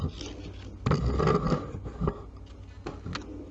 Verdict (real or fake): real